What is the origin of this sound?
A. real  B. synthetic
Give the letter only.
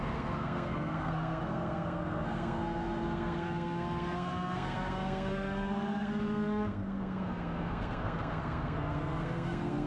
B